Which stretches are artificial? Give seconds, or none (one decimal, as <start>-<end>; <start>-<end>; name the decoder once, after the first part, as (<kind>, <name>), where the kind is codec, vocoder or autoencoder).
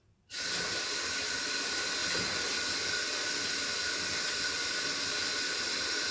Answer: none